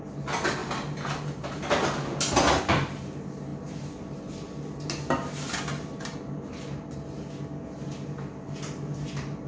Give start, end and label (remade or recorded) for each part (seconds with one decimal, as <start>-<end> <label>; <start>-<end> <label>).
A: 0.0-9.5 recorded